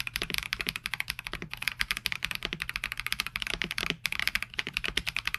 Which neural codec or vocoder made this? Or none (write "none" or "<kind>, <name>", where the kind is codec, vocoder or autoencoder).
vocoder, BigVGAN v2